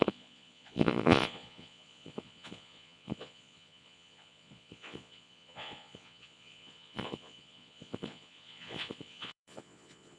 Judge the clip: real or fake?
fake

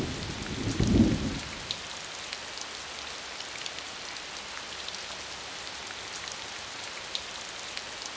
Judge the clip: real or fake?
real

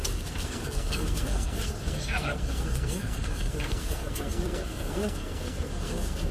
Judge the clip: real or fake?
fake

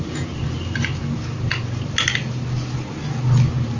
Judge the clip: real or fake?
real